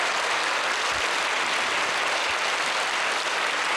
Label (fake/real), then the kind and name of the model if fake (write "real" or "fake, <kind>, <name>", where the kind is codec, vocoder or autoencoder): real